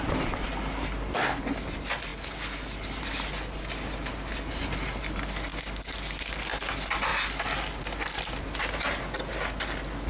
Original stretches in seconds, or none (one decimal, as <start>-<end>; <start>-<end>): 0.0-10.1